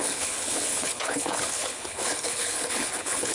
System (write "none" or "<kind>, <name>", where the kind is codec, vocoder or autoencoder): codec, HILCodec